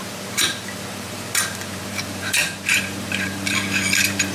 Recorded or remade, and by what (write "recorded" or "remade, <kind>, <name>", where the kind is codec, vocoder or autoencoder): remade, vocoder, BigVGAN v2